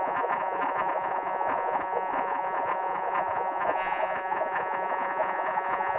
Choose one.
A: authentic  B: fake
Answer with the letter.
B